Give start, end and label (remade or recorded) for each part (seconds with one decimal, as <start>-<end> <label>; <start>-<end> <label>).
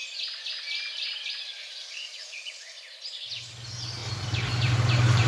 0.0-1.6 recorded; 1.6-2.6 remade; 2.6-4.0 recorded; 4.0-5.3 remade